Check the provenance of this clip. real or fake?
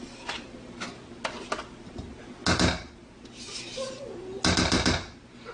real